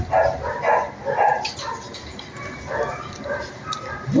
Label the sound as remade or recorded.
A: recorded